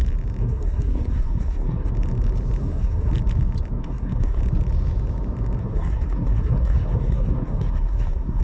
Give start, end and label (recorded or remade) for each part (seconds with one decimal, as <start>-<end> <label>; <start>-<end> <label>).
0.0-0.4 recorded; 0.4-1.9 remade; 1.9-2.6 recorded; 2.6-3.1 remade; 3.1-3.8 recorded; 3.8-4.4 remade; 4.4-5.6 recorded; 5.6-8.4 remade